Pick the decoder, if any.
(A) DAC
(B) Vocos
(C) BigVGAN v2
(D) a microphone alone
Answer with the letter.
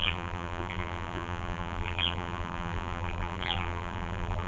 C